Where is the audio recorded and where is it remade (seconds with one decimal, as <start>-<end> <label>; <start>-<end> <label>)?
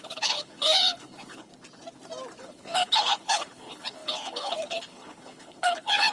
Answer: 0.0-1.5 remade; 1.5-2.4 recorded; 2.4-6.1 remade